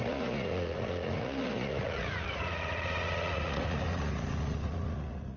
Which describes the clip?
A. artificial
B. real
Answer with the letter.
A